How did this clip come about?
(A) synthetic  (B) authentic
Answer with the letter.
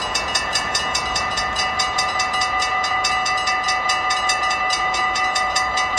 A